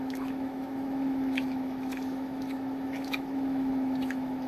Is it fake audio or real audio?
fake